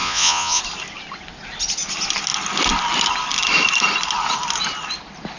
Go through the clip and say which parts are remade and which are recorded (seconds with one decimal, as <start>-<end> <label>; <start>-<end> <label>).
0.0-0.6 remade; 0.6-5.4 recorded